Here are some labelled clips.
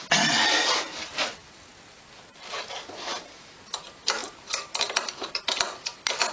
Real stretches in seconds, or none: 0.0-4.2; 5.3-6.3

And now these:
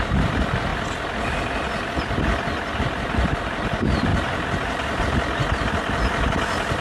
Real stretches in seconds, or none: 0.7-2.8; 4.1-5.0

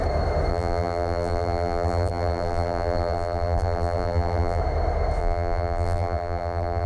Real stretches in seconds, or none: 0.0-0.5; 4.6-5.2

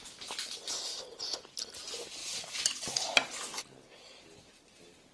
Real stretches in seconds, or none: 0.0-0.9; 1.5-5.1

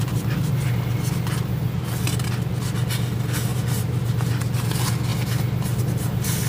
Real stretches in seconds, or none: 0.0-3.5; 4.4-6.5

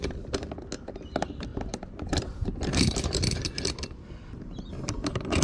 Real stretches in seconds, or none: 0.0-1.5; 4.7-5.4